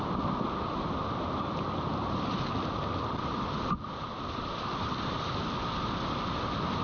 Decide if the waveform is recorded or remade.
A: recorded